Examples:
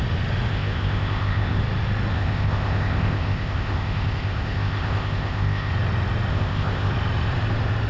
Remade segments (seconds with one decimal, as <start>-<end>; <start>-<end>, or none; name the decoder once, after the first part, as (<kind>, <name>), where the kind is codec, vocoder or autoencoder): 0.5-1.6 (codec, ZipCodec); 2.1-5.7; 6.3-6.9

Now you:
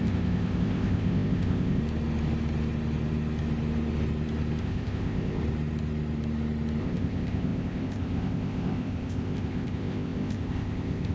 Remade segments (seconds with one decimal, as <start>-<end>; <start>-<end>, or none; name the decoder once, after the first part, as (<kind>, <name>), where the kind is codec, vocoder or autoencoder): 0.0-1.8 (codec, ZipCodec); 4.6-5.4; 6.8-11.1

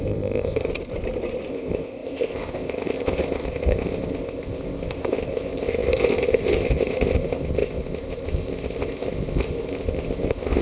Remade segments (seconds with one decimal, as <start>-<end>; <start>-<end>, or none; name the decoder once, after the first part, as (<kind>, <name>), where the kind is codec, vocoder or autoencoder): 0.0-0.7 (codec, ZipCodec); 1.5-10.6

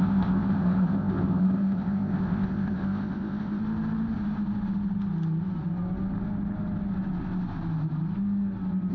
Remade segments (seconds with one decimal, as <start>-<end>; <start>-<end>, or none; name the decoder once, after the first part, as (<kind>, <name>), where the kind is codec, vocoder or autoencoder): 0.0-3.6 (codec, ZipCodec)

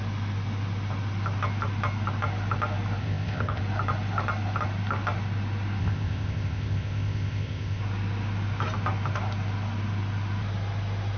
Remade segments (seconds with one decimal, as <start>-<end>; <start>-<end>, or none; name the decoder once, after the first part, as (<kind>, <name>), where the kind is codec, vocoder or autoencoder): 3.0-3.6 (codec, ZipCodec); 5.8-7.8